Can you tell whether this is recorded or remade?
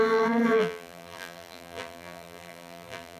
remade